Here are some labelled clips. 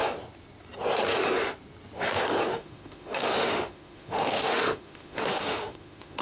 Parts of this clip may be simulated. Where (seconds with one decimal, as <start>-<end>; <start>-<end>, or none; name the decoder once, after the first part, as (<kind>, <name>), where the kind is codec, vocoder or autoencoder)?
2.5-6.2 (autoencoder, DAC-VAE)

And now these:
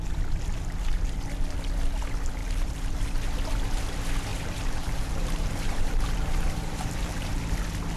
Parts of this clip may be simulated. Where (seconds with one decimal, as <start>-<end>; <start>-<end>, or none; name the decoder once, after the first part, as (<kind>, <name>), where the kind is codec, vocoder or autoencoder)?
2.4-3.0 (vocoder, BigVGAN v2); 4.3-7.3

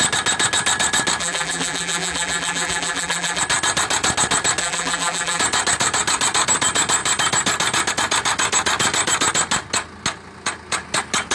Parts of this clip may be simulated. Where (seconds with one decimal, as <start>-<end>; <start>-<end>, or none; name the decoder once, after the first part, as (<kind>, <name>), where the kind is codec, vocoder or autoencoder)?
1.2-3.4 (vocoder, BigVGAN v2); 4.6-5.4